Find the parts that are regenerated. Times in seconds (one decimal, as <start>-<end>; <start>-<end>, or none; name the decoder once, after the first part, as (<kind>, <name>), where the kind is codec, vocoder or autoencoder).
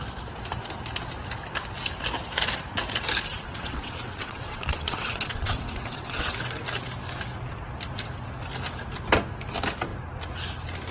3.3-6.3 (vocoder, WaveNeXt)